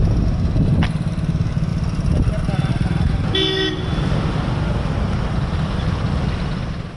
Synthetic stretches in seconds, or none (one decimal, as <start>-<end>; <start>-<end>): none